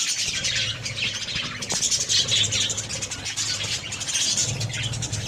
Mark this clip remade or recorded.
recorded